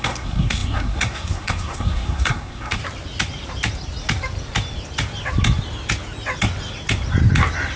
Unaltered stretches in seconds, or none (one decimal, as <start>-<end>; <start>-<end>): 2.8-7.8